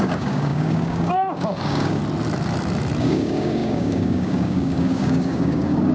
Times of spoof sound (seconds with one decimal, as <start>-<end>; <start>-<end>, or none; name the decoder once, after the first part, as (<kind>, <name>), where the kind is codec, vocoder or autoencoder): 0.0-2.0 (codec, DAC); 3.0-5.9